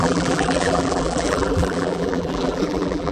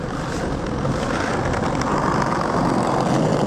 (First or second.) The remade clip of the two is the first